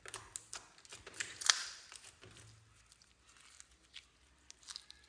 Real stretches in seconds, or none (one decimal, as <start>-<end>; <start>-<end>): 0.0-0.9; 2.4-5.1